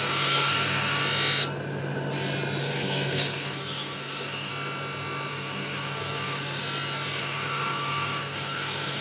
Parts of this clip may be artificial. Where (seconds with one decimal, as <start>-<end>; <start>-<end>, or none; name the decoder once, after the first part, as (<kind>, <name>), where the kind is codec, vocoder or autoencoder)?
0.0-1.0 (codec, SNAC); 2.6-4.5; 5.3-6.6; 7.2-9.0